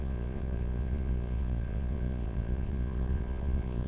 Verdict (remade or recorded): remade